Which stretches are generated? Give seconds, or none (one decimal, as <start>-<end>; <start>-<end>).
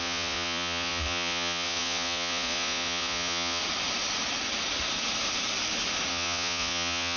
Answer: 0.0-3.6; 6.1-7.2